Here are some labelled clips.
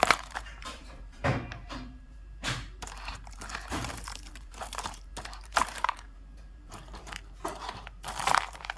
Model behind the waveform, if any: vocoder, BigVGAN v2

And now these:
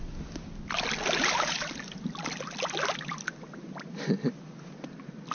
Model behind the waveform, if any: none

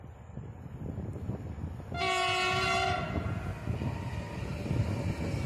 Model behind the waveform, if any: none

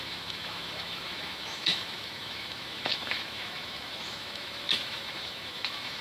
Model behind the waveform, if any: autoencoder, DAC-VAE